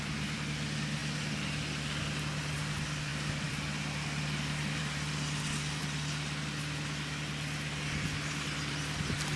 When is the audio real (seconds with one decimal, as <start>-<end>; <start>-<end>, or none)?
0.0-9.4

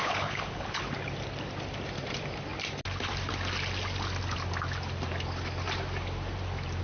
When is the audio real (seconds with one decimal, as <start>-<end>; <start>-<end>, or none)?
0.8-6.8

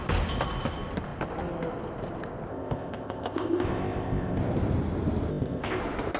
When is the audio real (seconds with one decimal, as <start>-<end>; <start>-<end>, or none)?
0.0-2.5; 4.4-5.3; 5.8-6.2

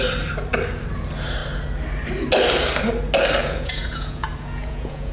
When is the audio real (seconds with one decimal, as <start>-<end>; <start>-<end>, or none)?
0.0-3.4

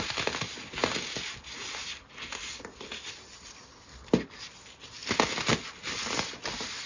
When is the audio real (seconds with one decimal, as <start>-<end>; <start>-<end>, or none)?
0.0-6.9

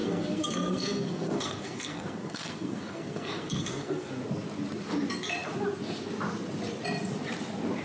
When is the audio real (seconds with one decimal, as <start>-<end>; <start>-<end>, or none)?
4.1-7.8

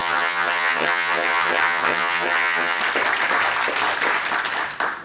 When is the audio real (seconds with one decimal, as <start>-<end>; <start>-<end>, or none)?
2.8-5.0

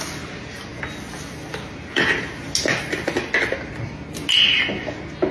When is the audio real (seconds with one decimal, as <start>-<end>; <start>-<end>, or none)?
0.0-5.3